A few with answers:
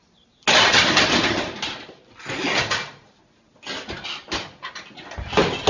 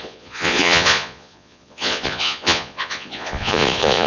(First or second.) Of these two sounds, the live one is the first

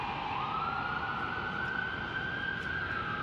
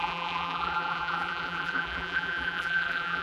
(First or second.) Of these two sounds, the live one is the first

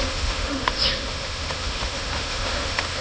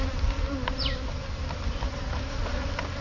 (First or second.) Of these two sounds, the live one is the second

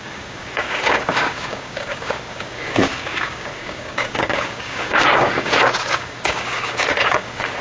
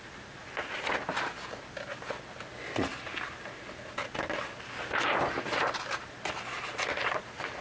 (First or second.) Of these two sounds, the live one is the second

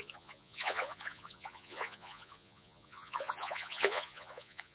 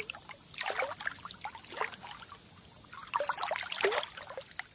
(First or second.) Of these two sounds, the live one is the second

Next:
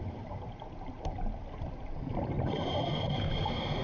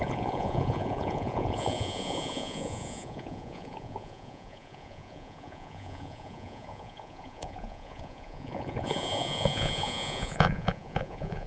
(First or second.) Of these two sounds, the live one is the first